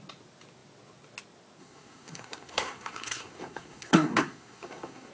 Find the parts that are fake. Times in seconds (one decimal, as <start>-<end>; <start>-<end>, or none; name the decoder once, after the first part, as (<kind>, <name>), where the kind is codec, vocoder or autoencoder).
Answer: 1.6-5.1 (codec, SNAC)